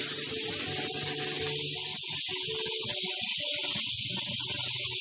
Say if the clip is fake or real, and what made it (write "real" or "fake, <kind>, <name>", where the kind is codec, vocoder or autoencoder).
real